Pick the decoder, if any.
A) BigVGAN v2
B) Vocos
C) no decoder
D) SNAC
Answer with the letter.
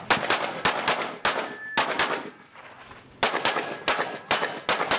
C